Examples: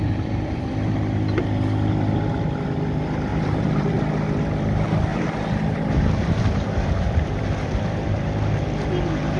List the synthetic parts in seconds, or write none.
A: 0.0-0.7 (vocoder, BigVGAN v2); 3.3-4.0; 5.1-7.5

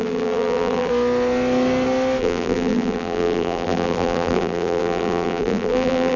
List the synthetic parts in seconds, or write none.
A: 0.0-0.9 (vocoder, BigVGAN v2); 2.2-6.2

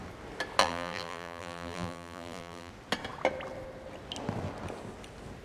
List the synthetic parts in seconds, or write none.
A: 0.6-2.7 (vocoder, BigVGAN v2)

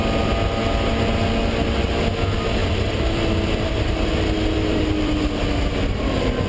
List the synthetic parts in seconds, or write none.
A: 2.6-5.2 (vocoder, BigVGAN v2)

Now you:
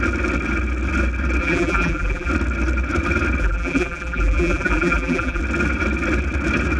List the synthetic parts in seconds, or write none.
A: 1.4-2.3 (vocoder, BigVGAN v2); 3.4-5.4